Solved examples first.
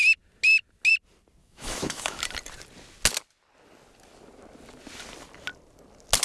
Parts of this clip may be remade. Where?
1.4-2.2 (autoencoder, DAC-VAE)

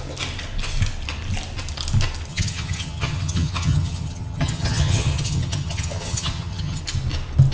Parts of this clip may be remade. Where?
2.3-6.8 (vocoder, HiFi-GAN)

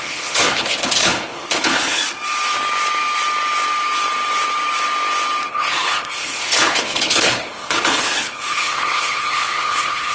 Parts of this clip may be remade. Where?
0.0-2.0 (codec, HILCodec); 5.5-10.1

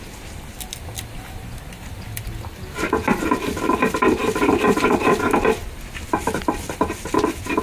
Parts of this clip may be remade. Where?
none

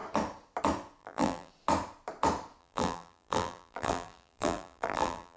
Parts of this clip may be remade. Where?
1.0-1.5 (vocoder, BigVGAN v2); 2.6-5.4

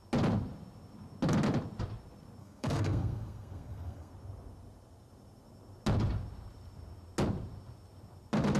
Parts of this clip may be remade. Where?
2.4-4.1 (codec, SNAC)

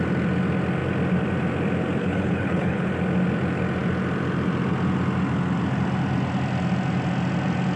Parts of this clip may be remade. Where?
2.0-2.9 (codec, HILCodec)